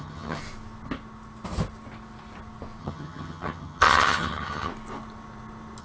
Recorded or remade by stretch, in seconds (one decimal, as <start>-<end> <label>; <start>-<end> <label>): 0.0-0.4 remade; 0.4-2.8 recorded; 2.8-4.7 remade; 4.7-5.8 recorded